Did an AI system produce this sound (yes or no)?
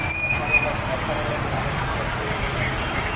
no